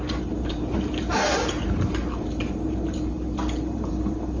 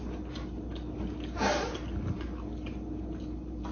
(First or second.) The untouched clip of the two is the second